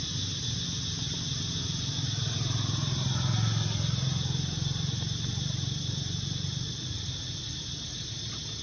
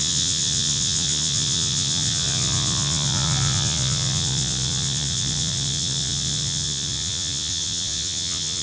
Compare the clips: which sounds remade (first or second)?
second